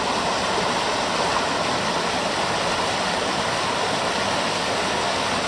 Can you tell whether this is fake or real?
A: real